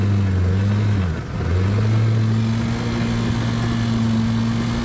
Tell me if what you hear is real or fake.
real